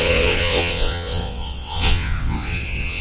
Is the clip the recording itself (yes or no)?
no